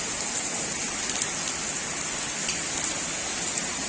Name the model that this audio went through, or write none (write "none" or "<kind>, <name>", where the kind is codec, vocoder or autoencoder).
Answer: none